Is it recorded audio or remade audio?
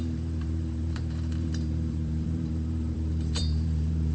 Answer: remade